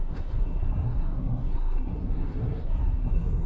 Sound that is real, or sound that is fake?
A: fake